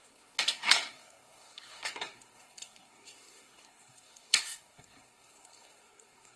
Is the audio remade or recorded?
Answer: remade